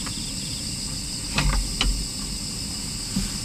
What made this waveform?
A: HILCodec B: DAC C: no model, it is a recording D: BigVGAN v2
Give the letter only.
C